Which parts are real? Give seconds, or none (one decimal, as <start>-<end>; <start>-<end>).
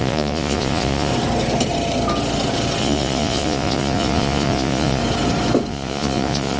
1.1-2.8; 5.0-5.7